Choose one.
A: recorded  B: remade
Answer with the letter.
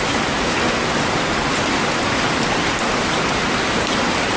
A